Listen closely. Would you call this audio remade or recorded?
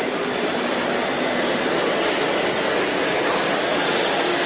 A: recorded